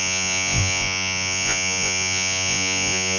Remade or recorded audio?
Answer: remade